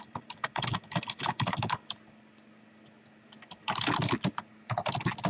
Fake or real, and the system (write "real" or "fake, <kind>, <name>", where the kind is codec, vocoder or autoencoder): real